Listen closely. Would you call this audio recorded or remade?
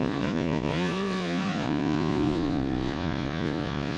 remade